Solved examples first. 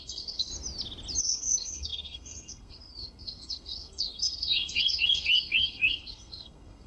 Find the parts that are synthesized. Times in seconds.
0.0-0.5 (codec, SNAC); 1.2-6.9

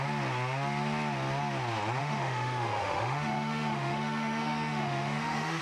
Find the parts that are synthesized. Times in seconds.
2.0-5.6 (autoencoder, DAC-VAE)

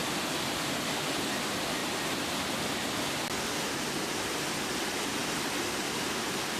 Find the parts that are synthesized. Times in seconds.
none